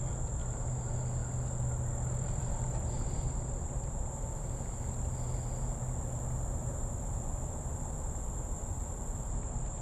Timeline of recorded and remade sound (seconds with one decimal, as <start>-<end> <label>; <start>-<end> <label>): 0.0-9.8 recorded